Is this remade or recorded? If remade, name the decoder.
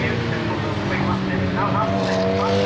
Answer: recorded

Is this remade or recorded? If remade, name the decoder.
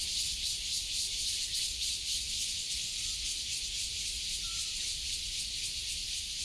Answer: remade, vocoder, BigVGAN v2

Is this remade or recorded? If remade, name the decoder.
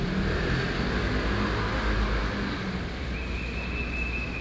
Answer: recorded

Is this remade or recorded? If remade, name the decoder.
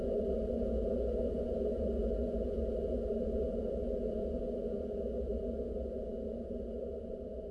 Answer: remade, vocoder, Vocos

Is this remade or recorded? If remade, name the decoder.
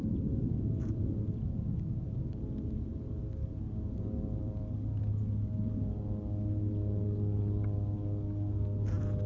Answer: recorded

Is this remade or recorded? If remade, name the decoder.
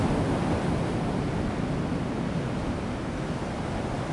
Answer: recorded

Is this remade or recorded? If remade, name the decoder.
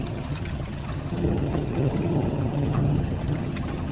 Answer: remade, vocoder, HiFi-GAN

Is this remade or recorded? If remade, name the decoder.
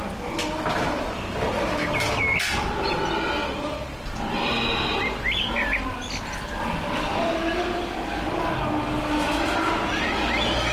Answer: recorded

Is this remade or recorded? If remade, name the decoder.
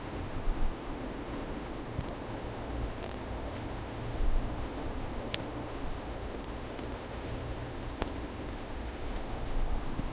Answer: remade, autoencoder, DAC-VAE